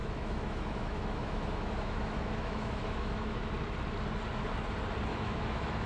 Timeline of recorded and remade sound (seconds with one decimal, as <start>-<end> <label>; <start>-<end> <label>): 0.0-3.5 remade; 3.5-5.1 recorded; 5.1-5.9 remade